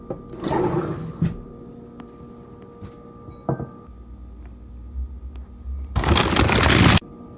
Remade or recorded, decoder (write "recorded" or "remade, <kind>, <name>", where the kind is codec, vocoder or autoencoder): recorded